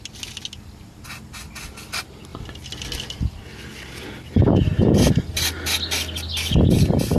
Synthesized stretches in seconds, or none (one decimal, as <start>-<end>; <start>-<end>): none